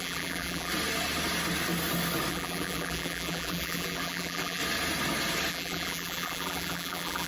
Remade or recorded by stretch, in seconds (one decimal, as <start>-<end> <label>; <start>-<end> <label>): 0.0-0.7 remade; 0.7-2.3 recorded; 2.3-4.6 remade; 4.6-5.5 recorded; 5.5-7.3 remade